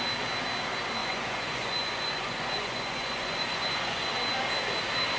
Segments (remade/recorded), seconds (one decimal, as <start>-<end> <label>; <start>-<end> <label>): 0.0-1.0 recorded; 1.0-4.1 remade; 4.1-5.2 recorded